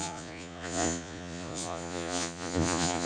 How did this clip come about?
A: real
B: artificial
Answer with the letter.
B